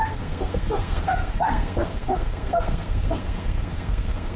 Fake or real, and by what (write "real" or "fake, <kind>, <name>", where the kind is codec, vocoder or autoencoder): fake, codec, SNAC